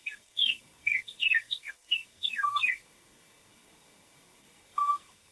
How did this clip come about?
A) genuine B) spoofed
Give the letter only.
B